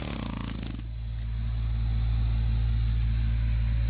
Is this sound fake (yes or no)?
no